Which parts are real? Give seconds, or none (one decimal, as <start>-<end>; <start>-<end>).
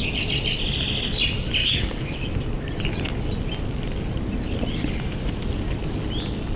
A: 0.0-1.6; 2.3-6.6